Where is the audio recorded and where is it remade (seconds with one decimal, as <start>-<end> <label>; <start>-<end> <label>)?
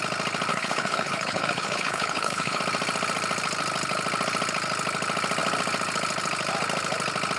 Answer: 0.0-0.5 recorded; 0.5-2.6 remade; 2.6-7.4 recorded